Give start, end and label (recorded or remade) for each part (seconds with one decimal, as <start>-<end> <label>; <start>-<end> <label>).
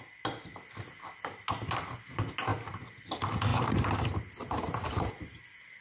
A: 0.0-5.8 recorded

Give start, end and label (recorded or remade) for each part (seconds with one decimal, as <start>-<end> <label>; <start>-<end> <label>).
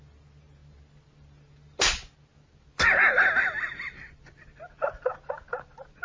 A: 0.0-6.0 recorded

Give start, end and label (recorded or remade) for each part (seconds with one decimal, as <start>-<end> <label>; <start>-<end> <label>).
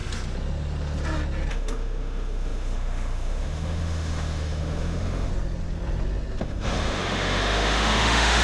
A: 0.0-1.5 recorded; 1.5-5.3 remade; 5.3-6.4 recorded; 6.4-8.4 remade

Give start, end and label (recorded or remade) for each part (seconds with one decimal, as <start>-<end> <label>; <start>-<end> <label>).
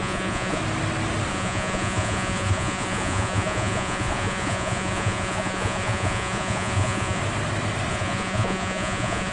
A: 0.0-0.6 remade; 0.6-1.3 recorded; 1.3-7.2 remade; 7.2-7.9 recorded; 7.9-9.3 remade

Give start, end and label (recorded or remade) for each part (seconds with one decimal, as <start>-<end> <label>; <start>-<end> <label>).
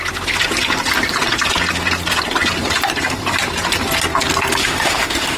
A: 0.0-4.6 recorded; 4.6-5.4 remade